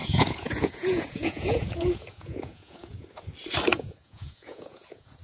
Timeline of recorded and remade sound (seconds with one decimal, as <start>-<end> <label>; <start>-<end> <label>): 0.0-3.1 remade; 3.1-3.7 recorded; 3.7-5.2 remade